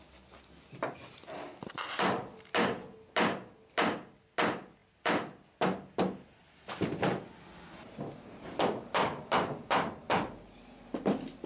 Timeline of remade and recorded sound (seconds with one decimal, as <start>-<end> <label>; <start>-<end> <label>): 0.0-11.5 recorded